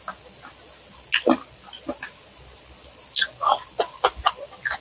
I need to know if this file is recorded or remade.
recorded